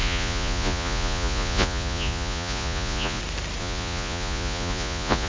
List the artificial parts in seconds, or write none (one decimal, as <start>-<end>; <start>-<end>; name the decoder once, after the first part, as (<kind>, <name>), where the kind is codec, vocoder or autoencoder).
0.0-3.2 (vocoder, Vocos); 3.6-5.3